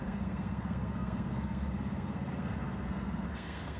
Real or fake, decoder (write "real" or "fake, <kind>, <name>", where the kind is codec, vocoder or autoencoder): fake, codec, SNAC